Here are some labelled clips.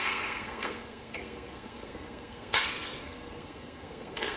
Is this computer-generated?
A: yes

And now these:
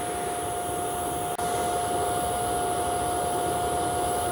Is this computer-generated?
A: no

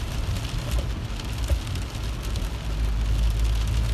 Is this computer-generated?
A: no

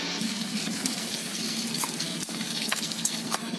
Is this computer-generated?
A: yes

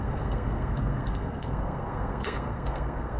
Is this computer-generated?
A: yes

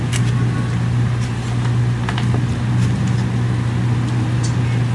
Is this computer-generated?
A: no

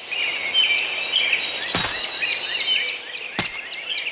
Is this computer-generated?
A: no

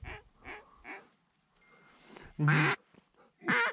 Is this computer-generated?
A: no